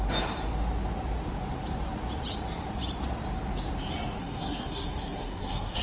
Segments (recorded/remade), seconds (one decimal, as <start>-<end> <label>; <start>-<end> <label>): 0.0-4.2 recorded; 4.2-5.8 remade